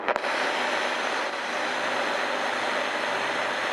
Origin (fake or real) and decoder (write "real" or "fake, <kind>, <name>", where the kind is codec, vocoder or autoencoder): fake, vocoder, BigVGAN v2